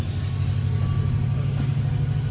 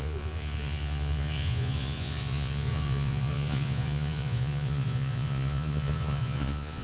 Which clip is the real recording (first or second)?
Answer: first